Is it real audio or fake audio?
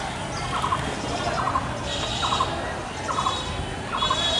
real